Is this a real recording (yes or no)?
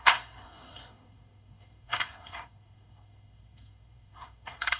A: no